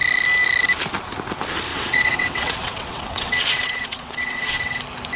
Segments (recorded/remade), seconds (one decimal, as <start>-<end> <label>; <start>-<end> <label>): 0.0-1.7 recorded; 1.7-4.8 remade; 4.8-5.2 recorded